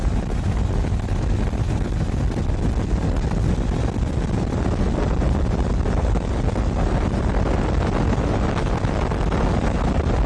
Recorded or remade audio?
recorded